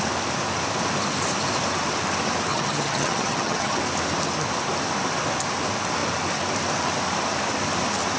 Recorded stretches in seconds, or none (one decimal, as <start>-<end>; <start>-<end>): 0.0-2.5; 3.8-8.2